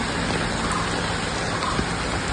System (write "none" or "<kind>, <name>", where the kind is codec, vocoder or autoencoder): none